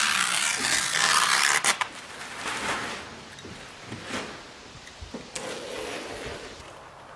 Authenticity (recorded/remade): recorded